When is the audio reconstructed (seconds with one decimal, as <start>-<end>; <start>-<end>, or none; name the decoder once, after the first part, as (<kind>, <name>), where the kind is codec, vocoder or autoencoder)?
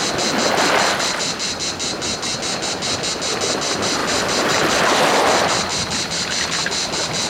5.7-6.6 (vocoder, BigVGAN v2)